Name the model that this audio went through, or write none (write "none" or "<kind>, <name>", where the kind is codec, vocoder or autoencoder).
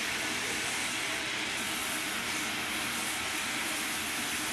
none